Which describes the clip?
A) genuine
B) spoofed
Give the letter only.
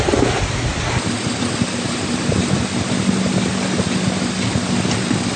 A